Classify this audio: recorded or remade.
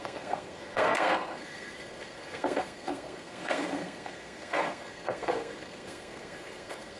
remade